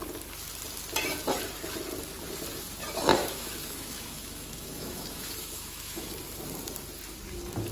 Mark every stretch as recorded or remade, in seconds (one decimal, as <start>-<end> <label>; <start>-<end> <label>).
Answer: 0.0-3.2 recorded; 3.2-6.1 remade; 6.1-7.7 recorded